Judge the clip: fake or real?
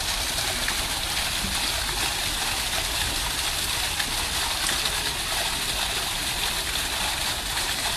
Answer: real